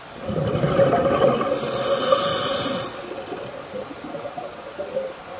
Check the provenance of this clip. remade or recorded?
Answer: recorded